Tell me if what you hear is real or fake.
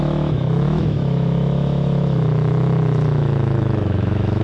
fake